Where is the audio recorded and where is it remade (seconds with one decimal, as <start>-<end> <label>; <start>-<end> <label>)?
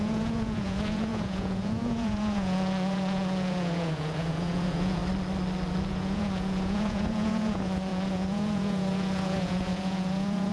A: 0.0-5.0 remade; 5.0-5.9 recorded; 5.9-10.5 remade